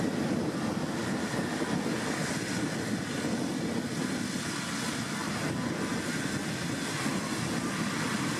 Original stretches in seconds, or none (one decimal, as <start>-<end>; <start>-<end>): 0.0-7.1; 7.8-8.4